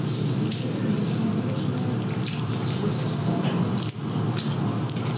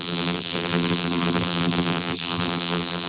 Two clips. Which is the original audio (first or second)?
first